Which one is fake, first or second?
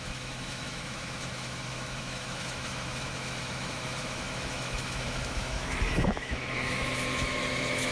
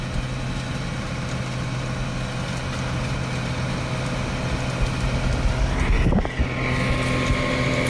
first